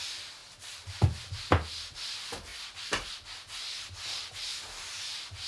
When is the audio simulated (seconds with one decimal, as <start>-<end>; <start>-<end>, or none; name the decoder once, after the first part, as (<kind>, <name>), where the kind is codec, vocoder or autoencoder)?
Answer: 0.4-1.0 (vocoder, BigVGAN v2); 4.5-5.1